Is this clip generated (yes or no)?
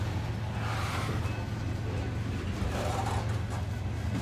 no